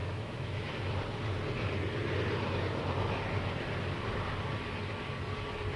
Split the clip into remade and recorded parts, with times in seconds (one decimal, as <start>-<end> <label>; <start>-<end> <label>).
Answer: 0.0-0.7 remade; 0.7-5.8 recorded